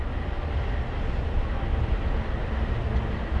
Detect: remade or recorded recorded